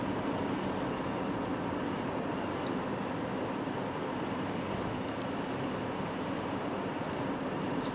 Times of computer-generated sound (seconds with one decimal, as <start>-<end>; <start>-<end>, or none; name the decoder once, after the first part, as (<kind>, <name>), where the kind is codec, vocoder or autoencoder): none

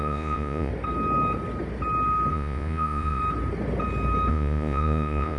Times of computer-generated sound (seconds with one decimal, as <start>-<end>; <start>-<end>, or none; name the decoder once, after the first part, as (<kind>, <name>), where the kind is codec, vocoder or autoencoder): 0.0-0.7 (vocoder, Vocos); 2.3-3.2; 4.3-5.4

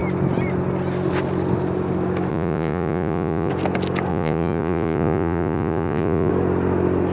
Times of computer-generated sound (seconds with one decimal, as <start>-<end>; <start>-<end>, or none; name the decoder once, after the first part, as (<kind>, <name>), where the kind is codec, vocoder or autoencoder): 2.3-3.5 (vocoder, Vocos); 4.1-6.3

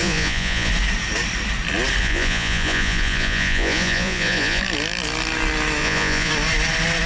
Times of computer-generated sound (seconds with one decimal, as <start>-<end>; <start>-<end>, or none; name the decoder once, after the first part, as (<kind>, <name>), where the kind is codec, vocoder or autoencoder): 0.0-0.7 (vocoder, Vocos); 2.0-4.6; 5.8-6.3

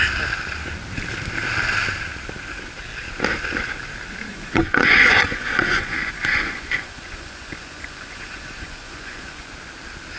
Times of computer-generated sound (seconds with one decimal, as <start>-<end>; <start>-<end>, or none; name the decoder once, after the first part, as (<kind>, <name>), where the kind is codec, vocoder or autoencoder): 4.3-9.5 (vocoder, Vocos)